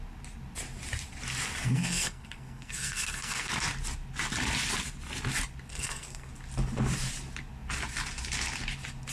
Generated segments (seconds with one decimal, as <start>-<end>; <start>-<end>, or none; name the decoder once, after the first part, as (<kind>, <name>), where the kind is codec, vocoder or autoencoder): 1.6-3.5 (codec, SNAC); 5.7-6.3